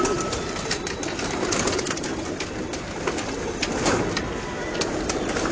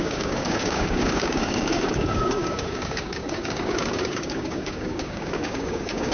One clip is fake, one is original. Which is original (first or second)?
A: first